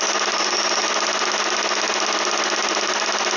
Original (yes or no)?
yes